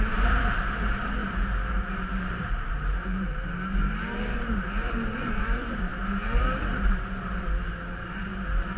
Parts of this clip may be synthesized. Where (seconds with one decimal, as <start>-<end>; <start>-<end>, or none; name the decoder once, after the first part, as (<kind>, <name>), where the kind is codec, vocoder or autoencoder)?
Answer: 0.0-8.8 (vocoder, BigVGAN v2)